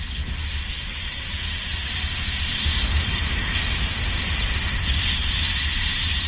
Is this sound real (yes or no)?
no